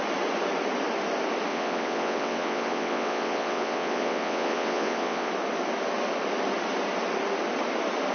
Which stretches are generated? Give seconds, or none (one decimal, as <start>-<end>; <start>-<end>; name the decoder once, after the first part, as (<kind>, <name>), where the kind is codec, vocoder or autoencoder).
1.5-5.3 (vocoder, WaveNeXt)